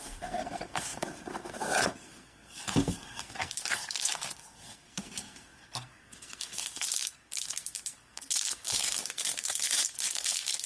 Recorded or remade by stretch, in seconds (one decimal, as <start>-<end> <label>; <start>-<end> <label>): 0.0-10.7 remade